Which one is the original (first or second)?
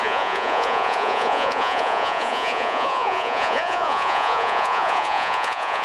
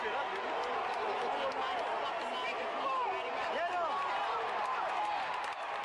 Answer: second